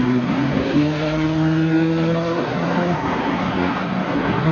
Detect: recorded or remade remade